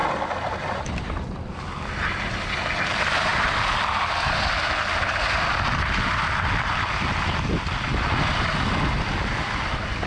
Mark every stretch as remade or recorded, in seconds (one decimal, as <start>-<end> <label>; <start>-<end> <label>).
0.0-10.1 recorded